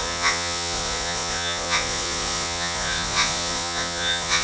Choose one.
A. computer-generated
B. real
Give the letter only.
A